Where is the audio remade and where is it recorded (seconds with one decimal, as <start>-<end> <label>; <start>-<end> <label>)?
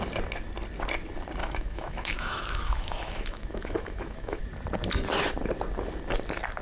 0.0-1.4 recorded; 1.4-4.4 remade; 4.4-6.6 recorded